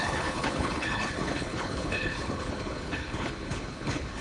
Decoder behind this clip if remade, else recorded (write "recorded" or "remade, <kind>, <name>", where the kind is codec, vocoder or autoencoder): remade, codec, HILCodec